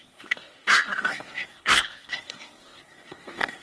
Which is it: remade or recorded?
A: remade